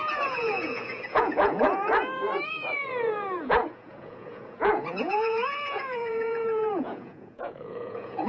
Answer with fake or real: fake